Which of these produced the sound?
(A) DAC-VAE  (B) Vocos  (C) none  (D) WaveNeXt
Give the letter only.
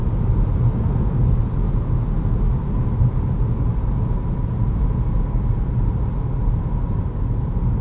C